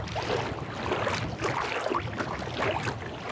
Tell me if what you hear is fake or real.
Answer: real